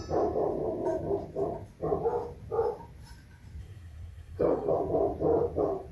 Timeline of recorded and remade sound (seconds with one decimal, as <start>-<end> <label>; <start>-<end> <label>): 0.0-3.6 recorded; 3.6-4.7 remade; 4.7-5.9 recorded